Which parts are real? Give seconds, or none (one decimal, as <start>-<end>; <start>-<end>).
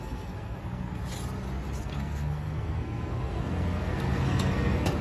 1.0-1.8